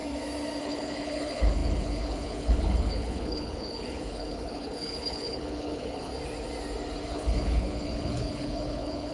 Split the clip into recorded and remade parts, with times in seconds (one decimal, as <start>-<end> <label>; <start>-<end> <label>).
0.0-0.6 recorded; 0.6-6.1 remade; 6.1-7.1 recorded; 7.1-9.1 remade